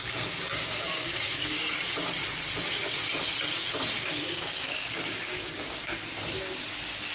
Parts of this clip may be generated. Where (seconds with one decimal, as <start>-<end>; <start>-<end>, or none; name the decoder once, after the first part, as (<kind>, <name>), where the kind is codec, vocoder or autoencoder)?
0.0-1.6 (codec, DAC); 4.2-5.9